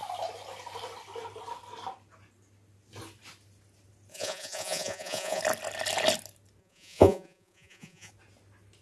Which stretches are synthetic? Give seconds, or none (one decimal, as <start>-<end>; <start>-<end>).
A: 4.1-5.4; 6.6-8.1